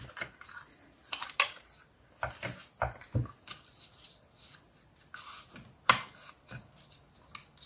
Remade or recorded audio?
recorded